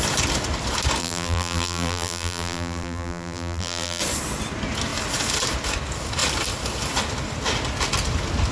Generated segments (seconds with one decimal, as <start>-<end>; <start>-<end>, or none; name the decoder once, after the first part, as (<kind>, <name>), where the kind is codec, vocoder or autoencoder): 1.0-4.0 (vocoder, BigVGAN v2)

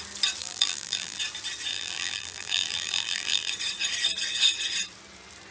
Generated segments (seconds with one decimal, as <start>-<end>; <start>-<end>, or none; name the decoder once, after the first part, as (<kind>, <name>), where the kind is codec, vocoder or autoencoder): 0.4-1.2 (vocoder, BigVGAN v2); 1.7-3.5

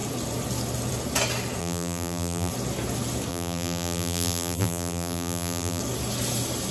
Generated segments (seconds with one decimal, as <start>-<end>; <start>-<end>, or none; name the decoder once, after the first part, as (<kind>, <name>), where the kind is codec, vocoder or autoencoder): 1.6-2.5 (vocoder, BigVGAN v2); 3.3-5.8